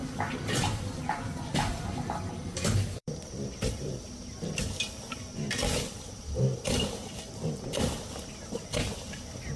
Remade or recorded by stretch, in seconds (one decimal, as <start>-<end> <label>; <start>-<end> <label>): 0.0-3.9 remade; 3.9-9.6 recorded